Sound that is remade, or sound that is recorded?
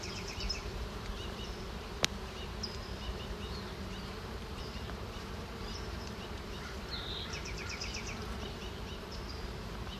remade